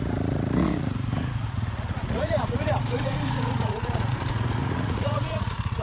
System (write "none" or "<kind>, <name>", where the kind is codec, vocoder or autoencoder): vocoder, Vocos